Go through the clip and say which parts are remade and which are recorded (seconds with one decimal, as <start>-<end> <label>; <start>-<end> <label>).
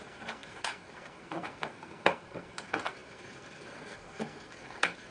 0.0-5.1 remade